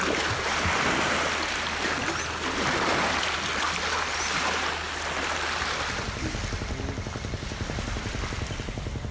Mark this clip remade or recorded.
recorded